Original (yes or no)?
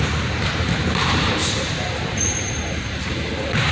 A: no